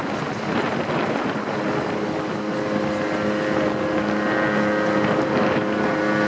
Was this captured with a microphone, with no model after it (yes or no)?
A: yes